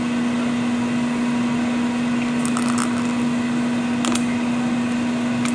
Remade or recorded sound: recorded